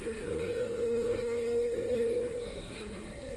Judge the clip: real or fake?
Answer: fake